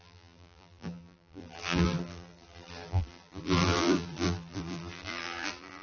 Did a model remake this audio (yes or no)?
yes